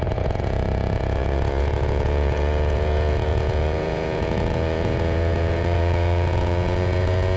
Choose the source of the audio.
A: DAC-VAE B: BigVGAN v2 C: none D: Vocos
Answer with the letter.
D